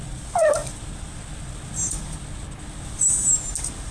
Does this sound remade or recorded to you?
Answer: recorded